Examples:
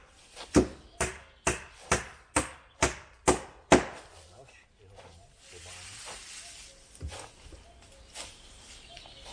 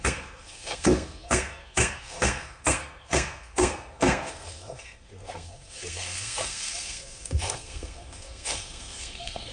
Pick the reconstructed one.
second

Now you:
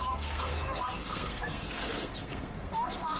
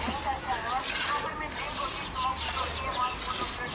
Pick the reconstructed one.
first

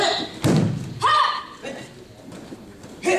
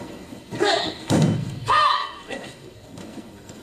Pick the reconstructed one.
second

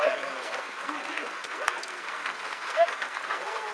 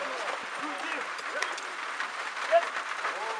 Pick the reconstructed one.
first